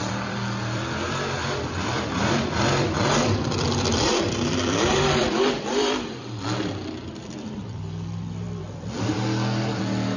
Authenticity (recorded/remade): remade